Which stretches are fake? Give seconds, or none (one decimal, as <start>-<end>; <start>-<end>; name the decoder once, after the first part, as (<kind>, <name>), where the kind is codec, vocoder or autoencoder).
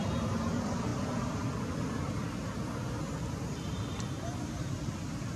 none